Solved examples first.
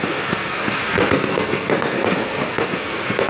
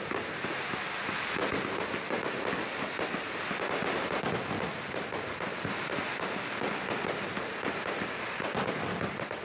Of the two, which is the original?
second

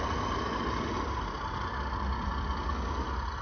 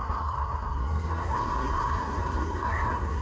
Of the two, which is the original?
first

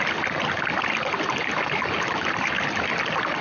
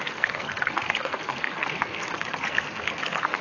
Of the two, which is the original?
first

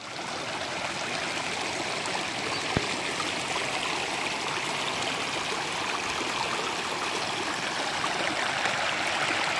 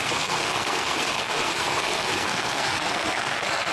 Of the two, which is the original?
first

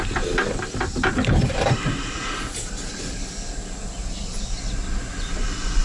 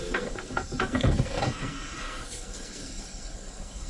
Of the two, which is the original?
first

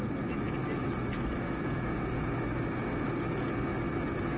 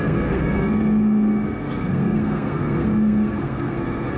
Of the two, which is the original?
first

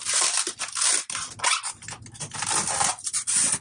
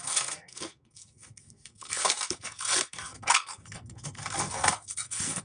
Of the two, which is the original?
first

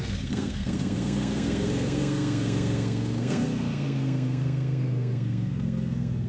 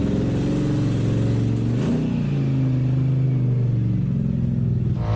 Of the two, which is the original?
second